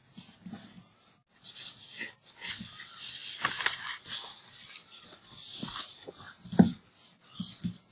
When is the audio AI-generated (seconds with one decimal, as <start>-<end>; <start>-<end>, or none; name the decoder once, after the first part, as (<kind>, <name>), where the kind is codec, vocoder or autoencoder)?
none